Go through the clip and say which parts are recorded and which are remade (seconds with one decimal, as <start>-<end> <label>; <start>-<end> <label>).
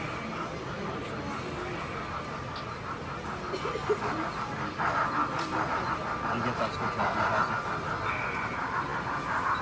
0.0-9.6 recorded